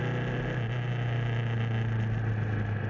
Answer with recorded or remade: recorded